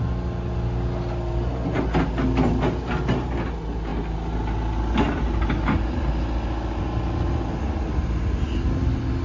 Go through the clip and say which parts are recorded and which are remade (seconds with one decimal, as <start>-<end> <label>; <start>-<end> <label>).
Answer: 0.0-9.2 recorded